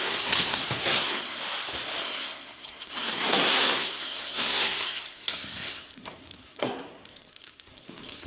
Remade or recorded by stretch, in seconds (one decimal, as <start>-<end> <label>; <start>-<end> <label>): 0.0-1.4 remade; 1.4-2.0 recorded; 2.0-8.3 remade